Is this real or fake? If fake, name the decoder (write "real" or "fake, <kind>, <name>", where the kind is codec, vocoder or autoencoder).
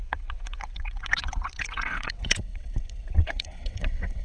fake, vocoder, WaveNeXt